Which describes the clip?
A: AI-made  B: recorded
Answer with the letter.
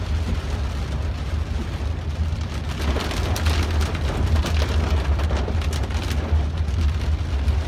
B